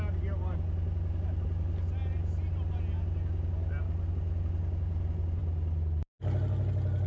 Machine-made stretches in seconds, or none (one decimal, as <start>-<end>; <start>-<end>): none